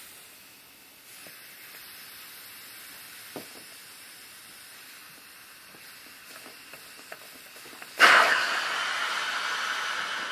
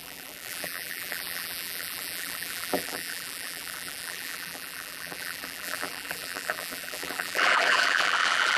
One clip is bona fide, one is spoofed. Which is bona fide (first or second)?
first